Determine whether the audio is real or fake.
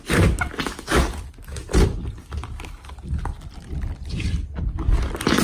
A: real